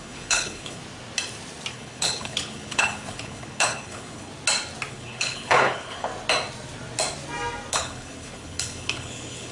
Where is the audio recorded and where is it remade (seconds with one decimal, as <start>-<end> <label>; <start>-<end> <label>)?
0.0-0.8 remade; 0.8-1.7 recorded; 1.7-4.3 remade; 4.3-4.9 recorded; 4.9-6.1 remade; 6.1-7.7 recorded; 7.7-9.5 remade